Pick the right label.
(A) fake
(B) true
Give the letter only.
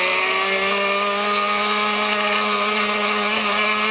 B